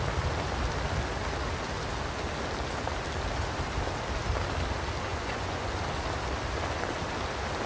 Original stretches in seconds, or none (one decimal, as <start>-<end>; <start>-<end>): 0.0-5.1; 5.7-7.7

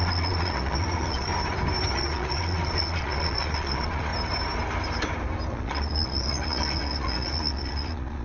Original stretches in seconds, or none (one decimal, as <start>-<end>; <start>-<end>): 1.3-1.9; 4.1-5.5

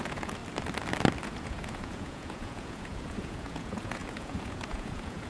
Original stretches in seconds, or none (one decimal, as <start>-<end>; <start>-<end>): 0.4-1.2

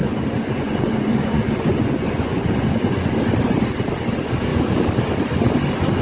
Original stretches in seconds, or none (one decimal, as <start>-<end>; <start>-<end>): 3.1-6.0